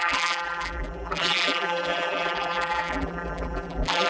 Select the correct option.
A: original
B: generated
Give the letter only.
B